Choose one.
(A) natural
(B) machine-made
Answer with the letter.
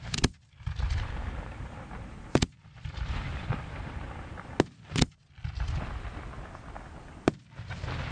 A